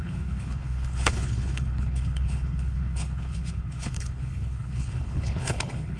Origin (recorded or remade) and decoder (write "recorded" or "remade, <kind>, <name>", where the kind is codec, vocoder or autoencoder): remade, codec, HILCodec